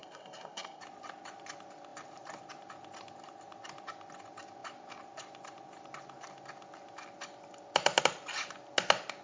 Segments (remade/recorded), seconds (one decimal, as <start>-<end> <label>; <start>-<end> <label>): 0.0-0.8 remade; 0.8-9.2 recorded